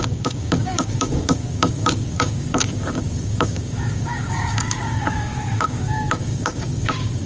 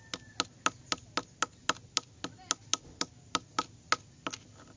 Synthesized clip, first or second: first